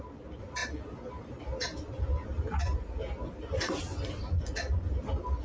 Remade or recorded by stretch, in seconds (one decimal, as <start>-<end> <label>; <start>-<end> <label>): 0.0-5.4 recorded